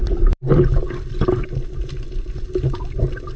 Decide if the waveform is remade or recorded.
recorded